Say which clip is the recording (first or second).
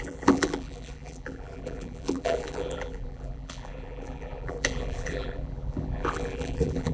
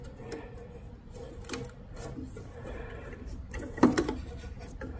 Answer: second